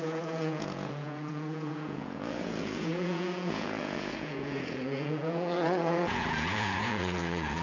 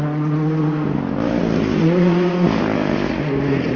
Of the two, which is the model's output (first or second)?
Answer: first